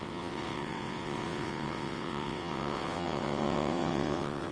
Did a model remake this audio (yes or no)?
yes